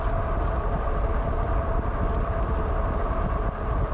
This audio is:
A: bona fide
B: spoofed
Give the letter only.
A